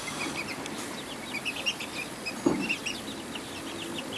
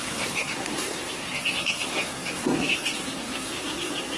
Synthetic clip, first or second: second